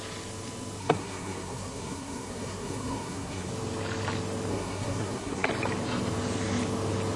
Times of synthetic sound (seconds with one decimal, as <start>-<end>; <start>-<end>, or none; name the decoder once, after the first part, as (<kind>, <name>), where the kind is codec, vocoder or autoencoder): 0.8-3.5 (codec, SNAC); 4.5-5.5